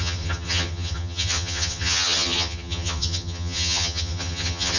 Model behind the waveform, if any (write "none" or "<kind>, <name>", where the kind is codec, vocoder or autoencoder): vocoder, HiFi-GAN